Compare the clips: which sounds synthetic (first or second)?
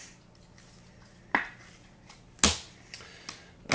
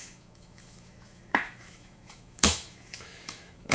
second